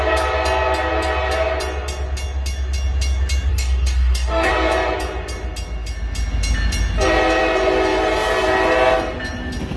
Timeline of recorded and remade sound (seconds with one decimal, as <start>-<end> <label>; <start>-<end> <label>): 0.0-3.5 recorded; 3.5-4.5 remade; 4.5-9.8 recorded